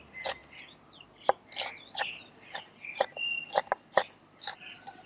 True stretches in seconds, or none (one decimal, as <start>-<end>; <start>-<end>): 0.0-5.1